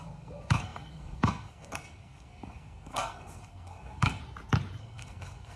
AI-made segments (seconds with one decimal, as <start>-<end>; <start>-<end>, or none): 0.0-4.2; 4.8-5.6